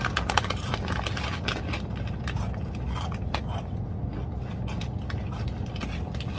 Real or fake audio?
real